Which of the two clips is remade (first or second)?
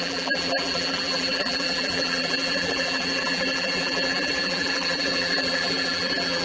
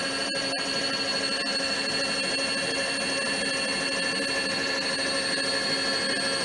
first